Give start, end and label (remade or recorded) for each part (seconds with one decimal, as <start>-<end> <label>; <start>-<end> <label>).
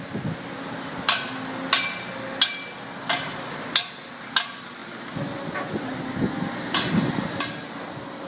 0.0-8.3 recorded